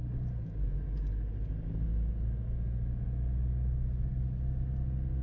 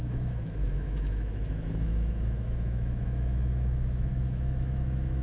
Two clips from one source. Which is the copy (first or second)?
second